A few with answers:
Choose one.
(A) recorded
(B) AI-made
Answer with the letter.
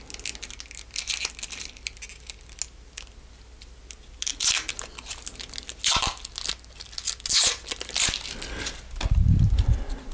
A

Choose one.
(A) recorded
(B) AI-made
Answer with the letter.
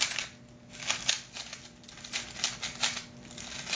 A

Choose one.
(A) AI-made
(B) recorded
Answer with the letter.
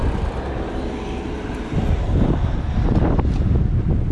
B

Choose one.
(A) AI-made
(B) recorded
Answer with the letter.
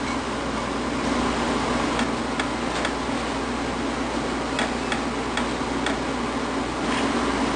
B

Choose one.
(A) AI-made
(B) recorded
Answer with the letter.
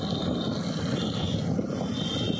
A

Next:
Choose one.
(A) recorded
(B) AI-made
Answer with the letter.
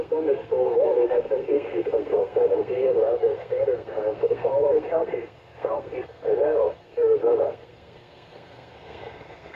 B